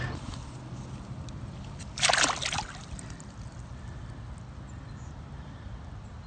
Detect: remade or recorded recorded